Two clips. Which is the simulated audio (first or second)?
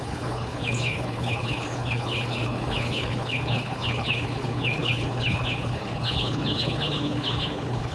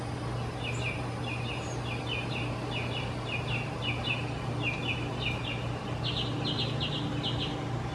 first